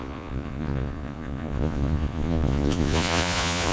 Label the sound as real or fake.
fake